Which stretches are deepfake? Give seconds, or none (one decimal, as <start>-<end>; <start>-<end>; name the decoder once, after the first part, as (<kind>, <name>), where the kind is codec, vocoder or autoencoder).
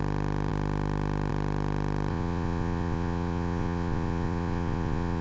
2.1-5.2 (vocoder, Vocos)